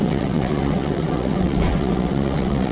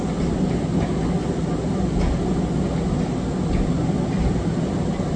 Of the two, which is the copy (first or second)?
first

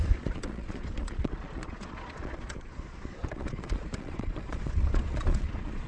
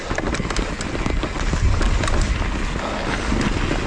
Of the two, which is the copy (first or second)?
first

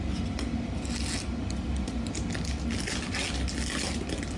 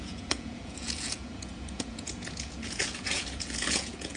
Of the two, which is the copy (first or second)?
second